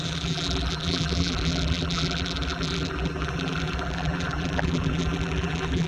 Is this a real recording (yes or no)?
no